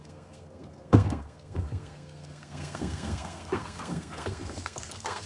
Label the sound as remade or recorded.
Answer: remade